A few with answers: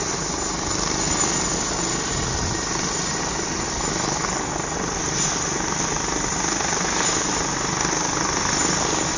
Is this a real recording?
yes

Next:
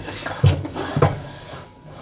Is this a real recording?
no